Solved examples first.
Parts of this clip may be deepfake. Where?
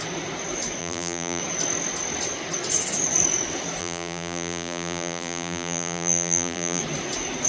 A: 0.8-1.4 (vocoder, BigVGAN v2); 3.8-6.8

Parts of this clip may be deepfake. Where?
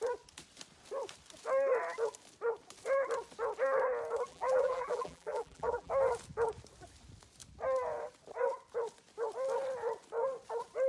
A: 4.3-5.9 (vocoder, BigVGAN v2)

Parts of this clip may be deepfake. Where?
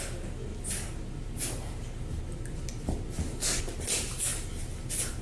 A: none